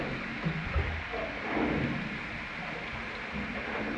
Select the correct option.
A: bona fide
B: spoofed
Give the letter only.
A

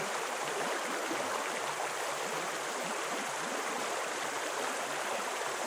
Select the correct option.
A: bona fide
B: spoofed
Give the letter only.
A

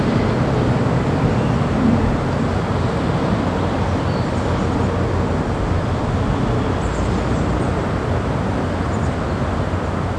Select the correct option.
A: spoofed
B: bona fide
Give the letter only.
B